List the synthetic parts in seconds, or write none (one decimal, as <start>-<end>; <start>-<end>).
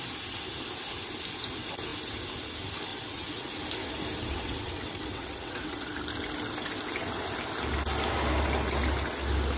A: 2.9-3.6; 4.2-5.9